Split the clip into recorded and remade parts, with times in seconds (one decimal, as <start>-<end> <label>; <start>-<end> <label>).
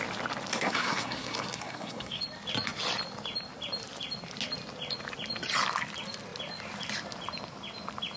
0.0-0.5 recorded; 0.5-2.2 remade; 2.2-8.2 recorded